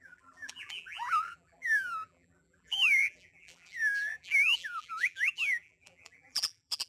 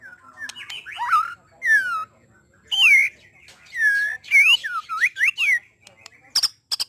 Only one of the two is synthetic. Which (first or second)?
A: first